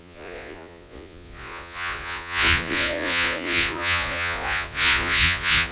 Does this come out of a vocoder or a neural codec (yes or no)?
yes